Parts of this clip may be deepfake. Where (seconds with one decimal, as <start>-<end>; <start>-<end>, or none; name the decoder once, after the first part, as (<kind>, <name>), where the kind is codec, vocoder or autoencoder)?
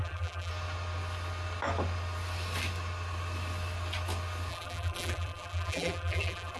0.0-0.5 (vocoder, BigVGAN v2); 4.5-6.6